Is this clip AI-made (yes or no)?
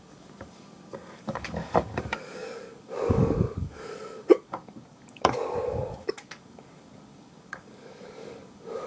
yes